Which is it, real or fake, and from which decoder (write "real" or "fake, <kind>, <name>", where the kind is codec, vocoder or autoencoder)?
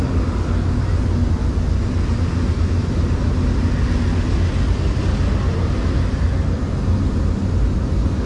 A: real